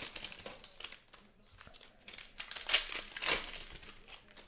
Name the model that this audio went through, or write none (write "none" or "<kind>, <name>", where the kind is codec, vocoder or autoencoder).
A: none